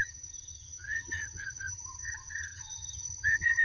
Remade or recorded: remade